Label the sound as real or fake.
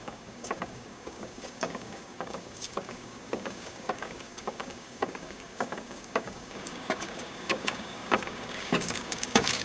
fake